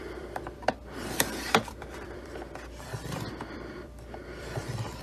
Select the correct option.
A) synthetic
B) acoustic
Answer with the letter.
A